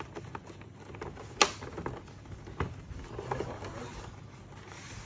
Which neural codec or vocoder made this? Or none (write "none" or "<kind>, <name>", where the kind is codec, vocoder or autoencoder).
none